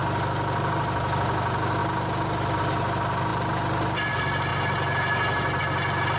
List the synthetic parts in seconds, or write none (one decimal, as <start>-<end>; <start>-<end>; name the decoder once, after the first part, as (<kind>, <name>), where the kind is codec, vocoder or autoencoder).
none